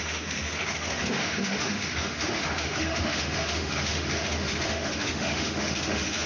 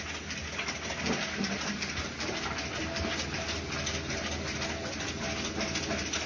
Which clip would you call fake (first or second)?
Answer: first